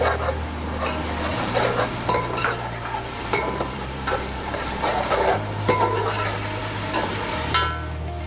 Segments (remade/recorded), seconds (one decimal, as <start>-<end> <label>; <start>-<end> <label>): 0.0-1.3 recorded; 1.3-5.3 remade; 5.3-6.6 recorded; 6.6-7.1 remade; 7.1-8.3 recorded

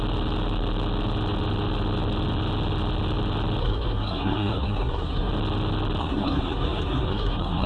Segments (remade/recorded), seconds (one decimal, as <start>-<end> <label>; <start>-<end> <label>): 0.0-3.6 recorded; 3.6-5.3 remade; 5.3-6.0 recorded; 6.0-7.7 remade

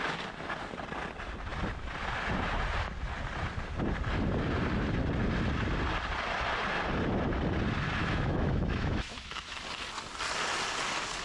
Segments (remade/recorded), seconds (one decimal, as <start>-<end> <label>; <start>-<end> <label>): 0.0-8.0 recorded; 8.0-9.6 remade; 9.6-11.2 recorded

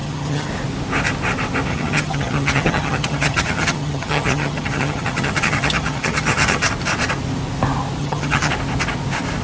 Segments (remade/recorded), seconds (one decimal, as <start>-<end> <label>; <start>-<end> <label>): 0.0-0.5 remade; 0.5-1.7 recorded; 1.7-6.7 remade; 6.7-8.0 recorded; 8.0-8.5 remade; 8.5-9.4 recorded